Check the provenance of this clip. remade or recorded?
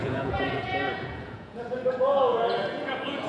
remade